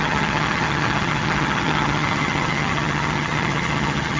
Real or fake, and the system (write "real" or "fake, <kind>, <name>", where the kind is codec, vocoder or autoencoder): fake, vocoder, HiFi-GAN